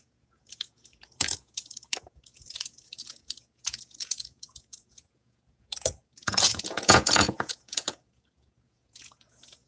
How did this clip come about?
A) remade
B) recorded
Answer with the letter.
A